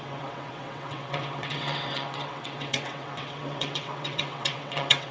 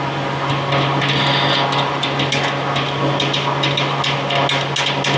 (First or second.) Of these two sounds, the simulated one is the first